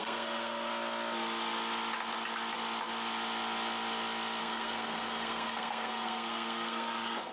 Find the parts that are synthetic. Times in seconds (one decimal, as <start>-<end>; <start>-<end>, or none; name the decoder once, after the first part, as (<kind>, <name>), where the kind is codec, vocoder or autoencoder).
0.0-0.7 (codec, SNAC); 4.4-7.3